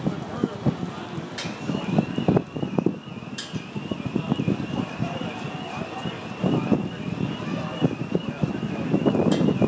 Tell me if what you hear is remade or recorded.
recorded